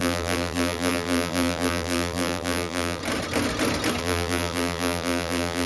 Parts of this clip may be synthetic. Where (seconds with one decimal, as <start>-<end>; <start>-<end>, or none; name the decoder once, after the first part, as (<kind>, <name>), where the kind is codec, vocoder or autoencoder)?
0.0-3.0 (vocoder, BigVGAN v2); 4.0-5.7